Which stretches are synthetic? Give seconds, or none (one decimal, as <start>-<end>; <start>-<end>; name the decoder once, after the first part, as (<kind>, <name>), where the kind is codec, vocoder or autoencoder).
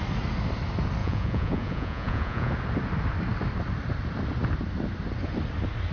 1.0-2.5 (vocoder, Vocos)